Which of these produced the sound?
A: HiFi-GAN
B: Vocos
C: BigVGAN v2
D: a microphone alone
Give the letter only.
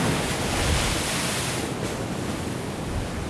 D